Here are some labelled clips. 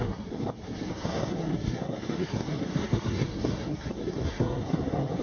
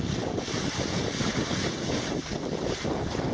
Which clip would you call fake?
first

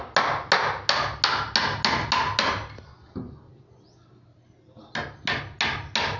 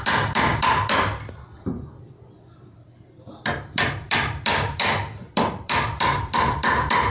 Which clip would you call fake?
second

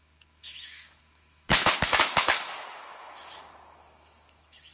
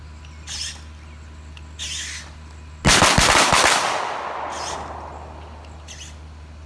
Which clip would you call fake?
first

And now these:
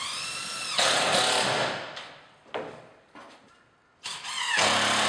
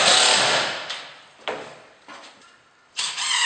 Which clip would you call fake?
second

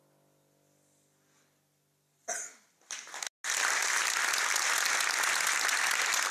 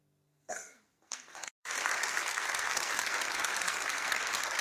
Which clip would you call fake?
second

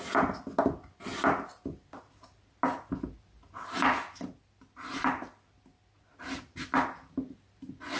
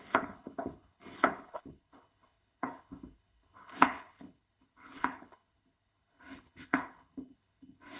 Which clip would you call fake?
second